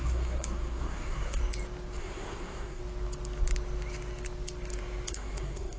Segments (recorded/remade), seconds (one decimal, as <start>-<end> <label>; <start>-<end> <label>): 0.0-1.4 remade; 1.4-2.0 recorded; 2.0-2.8 remade; 2.8-5.1 recorded; 5.1-5.8 remade